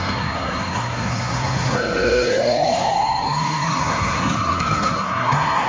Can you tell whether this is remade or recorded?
remade